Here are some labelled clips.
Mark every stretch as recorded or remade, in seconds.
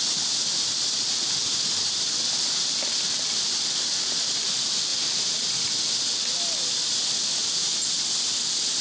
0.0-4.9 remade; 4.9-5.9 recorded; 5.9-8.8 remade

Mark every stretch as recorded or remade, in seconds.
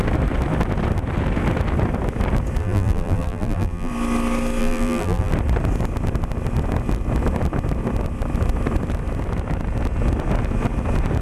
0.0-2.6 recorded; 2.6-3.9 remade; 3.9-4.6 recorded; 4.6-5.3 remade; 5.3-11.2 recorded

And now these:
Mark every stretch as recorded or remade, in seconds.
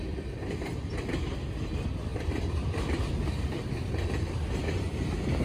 0.0-2.1 recorded; 2.1-4.6 remade; 4.6-5.4 recorded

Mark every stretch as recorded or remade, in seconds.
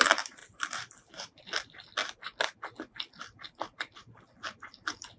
0.0-2.0 remade; 2.0-5.2 recorded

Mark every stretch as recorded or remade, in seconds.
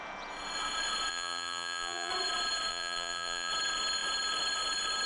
0.0-1.1 recorded; 1.1-2.1 remade; 2.1-2.7 recorded; 2.7-3.5 remade; 3.5-5.1 recorded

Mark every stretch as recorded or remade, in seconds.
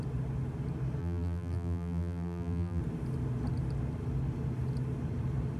0.0-1.0 recorded; 1.0-2.8 remade; 2.8-5.6 recorded